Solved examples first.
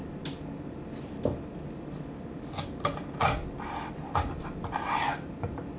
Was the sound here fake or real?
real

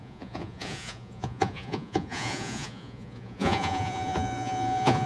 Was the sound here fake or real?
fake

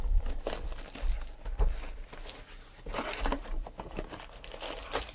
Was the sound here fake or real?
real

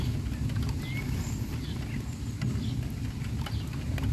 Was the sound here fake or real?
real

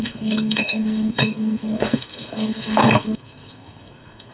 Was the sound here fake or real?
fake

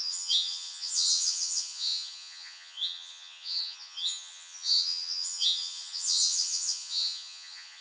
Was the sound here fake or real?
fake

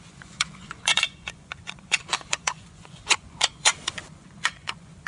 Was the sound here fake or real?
fake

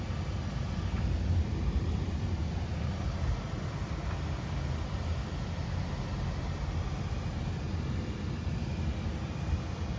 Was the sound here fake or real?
real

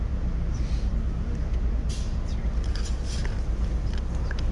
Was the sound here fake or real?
real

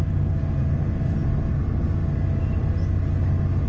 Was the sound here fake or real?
real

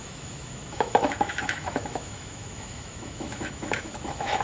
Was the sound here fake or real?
fake